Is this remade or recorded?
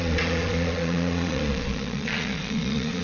remade